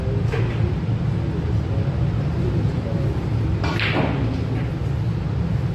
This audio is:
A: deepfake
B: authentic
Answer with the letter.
B